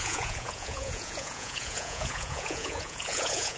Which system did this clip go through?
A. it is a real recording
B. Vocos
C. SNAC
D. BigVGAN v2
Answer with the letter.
B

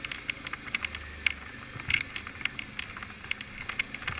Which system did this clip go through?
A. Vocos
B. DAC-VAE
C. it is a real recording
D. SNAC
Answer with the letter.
C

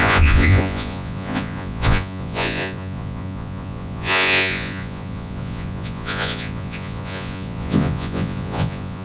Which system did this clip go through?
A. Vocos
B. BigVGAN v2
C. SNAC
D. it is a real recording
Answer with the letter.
A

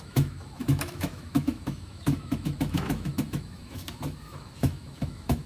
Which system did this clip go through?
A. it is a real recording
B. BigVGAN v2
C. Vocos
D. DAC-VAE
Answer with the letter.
D